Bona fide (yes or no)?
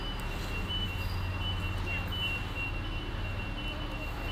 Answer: yes